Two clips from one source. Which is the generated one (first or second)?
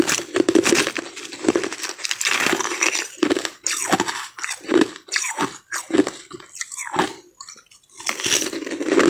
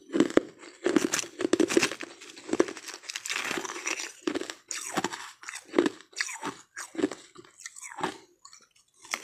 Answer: first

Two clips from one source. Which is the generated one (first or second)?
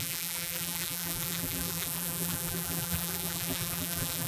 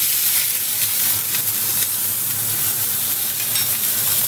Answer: first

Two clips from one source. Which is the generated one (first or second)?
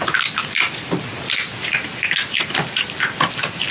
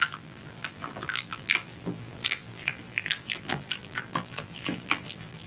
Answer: second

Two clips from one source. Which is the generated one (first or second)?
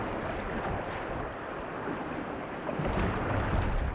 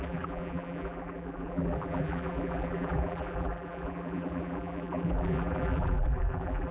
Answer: second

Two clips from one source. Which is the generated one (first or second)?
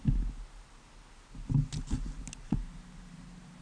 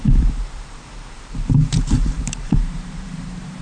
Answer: second